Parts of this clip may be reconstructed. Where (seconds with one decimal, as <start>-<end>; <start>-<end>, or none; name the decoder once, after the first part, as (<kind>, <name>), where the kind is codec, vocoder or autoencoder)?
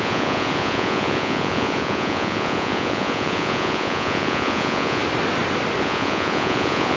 0.0-5.0 (vocoder, Vocos); 5.8-7.0